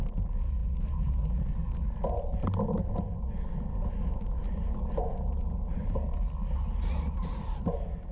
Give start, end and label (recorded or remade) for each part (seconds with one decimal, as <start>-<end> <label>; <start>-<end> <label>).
0.0-8.1 recorded